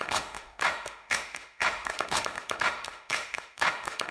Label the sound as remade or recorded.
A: remade